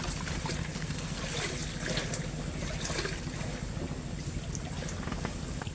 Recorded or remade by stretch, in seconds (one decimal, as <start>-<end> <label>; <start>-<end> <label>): 0.0-0.6 recorded; 0.6-1.2 remade; 1.2-5.7 recorded